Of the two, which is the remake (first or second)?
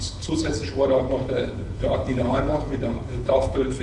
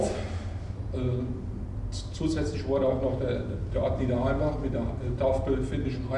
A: first